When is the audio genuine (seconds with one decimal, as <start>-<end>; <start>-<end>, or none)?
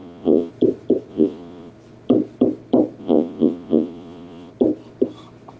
0.5-1.1; 1.7-3.0; 4.5-5.6